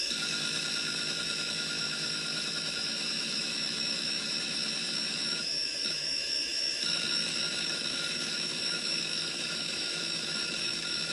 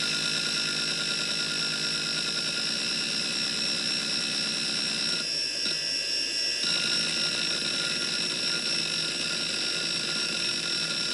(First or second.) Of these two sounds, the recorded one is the second